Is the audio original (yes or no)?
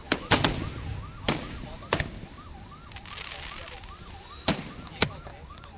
yes